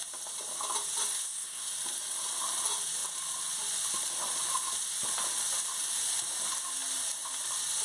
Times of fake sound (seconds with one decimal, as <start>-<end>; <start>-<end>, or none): 1.1-1.7